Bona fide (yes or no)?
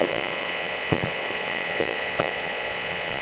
no